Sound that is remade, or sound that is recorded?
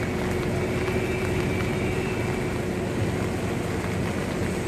recorded